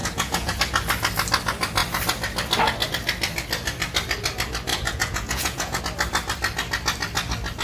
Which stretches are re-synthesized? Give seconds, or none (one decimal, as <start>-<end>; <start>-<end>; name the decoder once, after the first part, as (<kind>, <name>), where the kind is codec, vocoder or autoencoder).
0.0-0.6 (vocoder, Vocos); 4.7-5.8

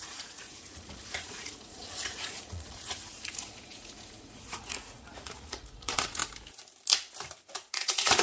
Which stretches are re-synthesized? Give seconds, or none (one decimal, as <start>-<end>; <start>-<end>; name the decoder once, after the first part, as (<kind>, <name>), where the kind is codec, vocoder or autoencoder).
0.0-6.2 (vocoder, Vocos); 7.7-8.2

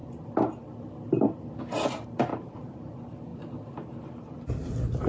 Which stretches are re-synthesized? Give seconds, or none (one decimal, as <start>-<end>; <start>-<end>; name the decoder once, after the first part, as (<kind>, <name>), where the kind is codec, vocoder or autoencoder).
2.3-2.8 (vocoder, BigVGAN v2)

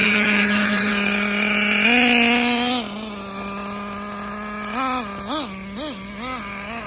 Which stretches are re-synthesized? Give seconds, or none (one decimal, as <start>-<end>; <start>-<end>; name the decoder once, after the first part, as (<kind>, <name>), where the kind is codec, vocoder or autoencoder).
0.0-0.9 (vocoder, HiFi-GAN)